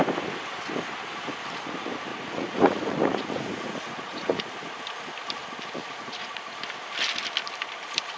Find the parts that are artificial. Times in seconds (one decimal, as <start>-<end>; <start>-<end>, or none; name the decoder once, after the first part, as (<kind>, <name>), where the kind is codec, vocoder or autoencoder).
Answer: 2.1-4.4 (vocoder, Vocos); 5.8-6.6